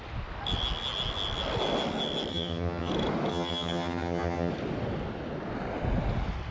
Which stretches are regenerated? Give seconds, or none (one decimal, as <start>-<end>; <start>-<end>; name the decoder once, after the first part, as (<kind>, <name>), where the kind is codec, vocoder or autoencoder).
2.3-2.9 (vocoder, HiFi-GAN); 3.3-4.5